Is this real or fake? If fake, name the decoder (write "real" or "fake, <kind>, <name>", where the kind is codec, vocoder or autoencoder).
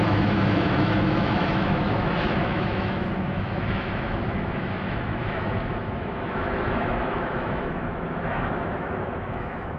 fake, autoencoder, DAC-VAE